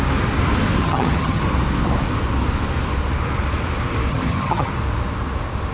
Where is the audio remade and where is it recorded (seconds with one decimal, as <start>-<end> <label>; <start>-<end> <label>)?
0.0-0.8 recorded; 0.8-1.4 remade; 1.4-4.1 recorded; 4.1-4.7 remade; 4.7-5.7 recorded